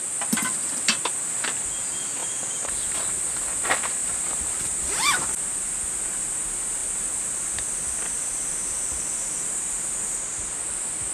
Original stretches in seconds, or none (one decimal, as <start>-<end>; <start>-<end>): 0.0-2.2; 3.0-4.0; 4.6-11.1